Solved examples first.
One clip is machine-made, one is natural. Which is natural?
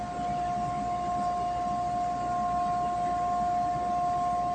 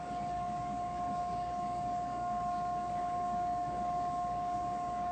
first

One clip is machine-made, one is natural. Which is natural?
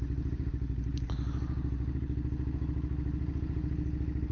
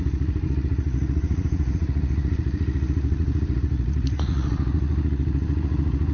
first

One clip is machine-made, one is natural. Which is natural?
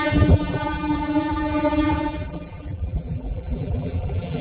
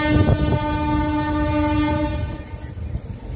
second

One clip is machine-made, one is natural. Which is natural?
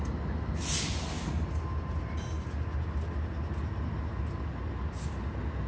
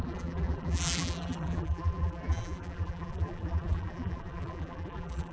first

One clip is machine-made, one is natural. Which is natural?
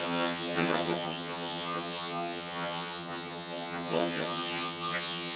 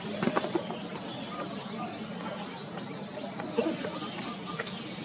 second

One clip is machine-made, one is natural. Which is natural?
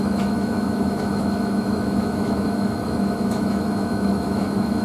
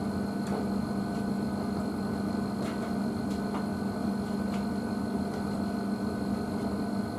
second